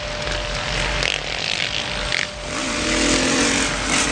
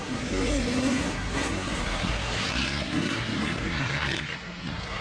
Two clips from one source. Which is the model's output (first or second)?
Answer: second